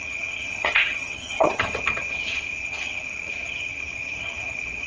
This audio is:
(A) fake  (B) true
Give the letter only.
A